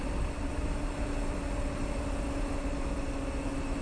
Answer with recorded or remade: recorded